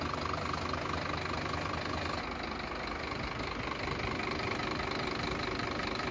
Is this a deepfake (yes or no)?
no